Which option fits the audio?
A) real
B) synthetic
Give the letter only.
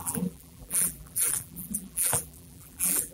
B